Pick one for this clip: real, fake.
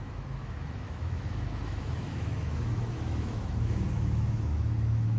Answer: fake